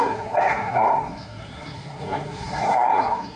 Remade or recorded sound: remade